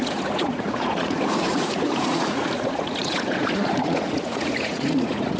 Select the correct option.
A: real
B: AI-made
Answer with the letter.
B